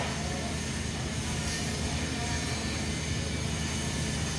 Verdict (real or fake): real